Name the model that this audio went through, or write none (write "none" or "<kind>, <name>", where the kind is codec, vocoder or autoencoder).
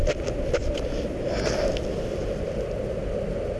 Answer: none